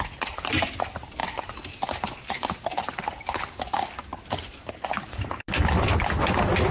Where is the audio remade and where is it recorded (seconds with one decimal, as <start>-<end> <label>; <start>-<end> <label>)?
0.0-6.7 recorded